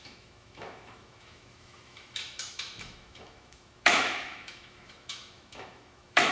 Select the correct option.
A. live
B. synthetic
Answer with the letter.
B